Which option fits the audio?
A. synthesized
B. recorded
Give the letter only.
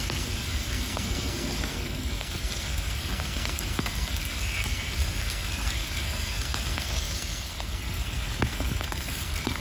A